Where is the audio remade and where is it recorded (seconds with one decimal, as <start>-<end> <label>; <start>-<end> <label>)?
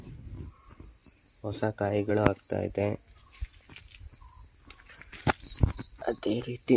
0.0-6.8 recorded